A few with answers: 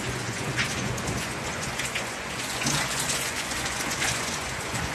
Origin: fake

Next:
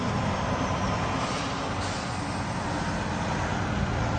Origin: real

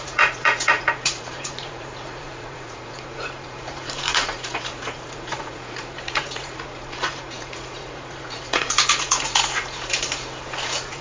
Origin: fake